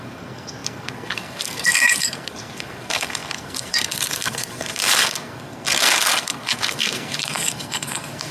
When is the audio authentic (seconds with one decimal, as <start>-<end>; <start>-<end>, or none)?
none